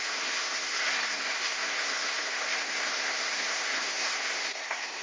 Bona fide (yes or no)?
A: no